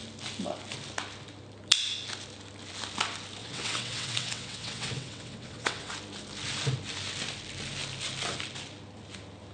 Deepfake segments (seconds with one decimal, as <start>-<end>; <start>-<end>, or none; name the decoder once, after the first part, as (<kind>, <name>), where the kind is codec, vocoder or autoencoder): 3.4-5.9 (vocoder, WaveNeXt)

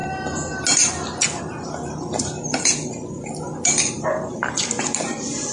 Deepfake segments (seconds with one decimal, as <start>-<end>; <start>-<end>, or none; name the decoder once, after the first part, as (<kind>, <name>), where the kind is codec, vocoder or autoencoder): none

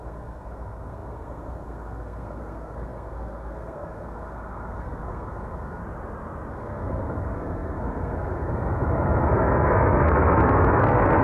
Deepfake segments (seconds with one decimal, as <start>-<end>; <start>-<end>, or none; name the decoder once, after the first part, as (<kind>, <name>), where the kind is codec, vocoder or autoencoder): 0.0-5.8 (codec, SNAC); 6.5-11.2

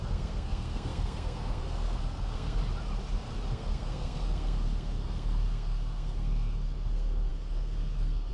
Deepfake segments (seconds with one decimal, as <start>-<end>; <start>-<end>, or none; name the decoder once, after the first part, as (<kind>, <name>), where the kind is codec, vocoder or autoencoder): 0.0-2.6 (codec, SNAC); 3.5-8.3